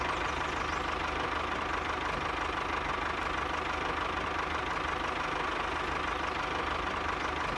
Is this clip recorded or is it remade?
recorded